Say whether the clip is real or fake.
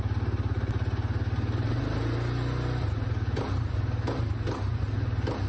real